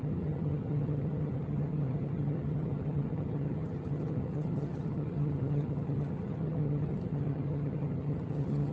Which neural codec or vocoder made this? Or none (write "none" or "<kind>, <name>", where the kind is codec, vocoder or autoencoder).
vocoder, HiFi-GAN